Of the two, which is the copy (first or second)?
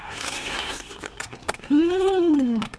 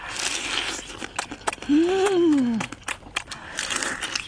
first